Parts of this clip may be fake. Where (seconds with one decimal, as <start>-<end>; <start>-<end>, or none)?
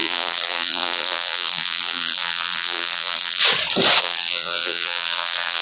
0.0-3.4; 4.0-5.6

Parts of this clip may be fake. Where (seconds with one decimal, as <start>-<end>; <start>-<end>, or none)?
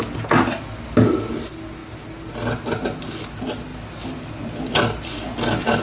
none